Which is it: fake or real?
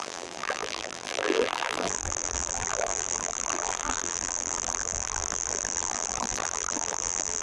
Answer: fake